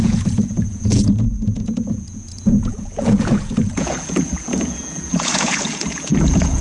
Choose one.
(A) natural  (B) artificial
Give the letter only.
B